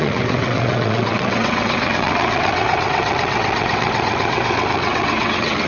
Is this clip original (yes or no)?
no